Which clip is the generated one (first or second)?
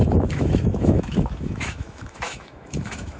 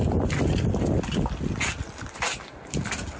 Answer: first